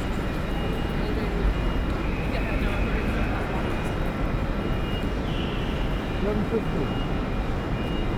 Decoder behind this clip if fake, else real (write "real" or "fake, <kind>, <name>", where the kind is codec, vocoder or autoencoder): real